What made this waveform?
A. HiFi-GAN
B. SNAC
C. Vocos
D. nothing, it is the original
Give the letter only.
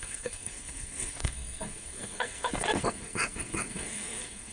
B